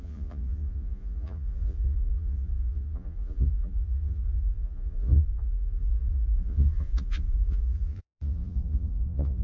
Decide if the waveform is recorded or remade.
remade